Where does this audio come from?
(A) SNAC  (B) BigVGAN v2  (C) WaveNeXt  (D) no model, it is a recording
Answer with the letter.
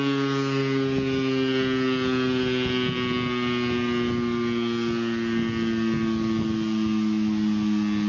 D